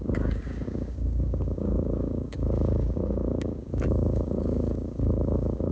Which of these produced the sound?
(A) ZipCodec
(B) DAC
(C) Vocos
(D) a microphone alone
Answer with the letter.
B